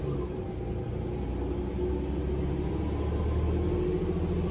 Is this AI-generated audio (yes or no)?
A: no